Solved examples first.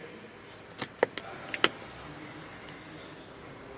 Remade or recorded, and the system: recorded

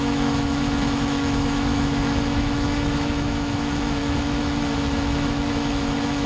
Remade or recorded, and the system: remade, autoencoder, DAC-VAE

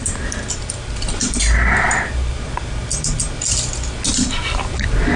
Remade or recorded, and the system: recorded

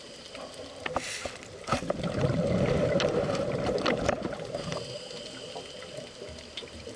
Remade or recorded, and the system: recorded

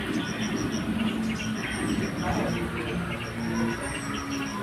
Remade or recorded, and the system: recorded